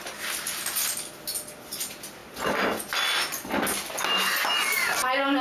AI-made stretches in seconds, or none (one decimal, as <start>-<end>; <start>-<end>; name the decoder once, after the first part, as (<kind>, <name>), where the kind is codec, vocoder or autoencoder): none